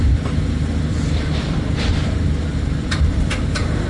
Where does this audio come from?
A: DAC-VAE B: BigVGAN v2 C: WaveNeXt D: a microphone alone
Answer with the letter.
B